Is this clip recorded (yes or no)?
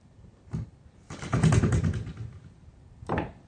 yes